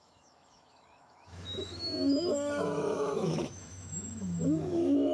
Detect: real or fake fake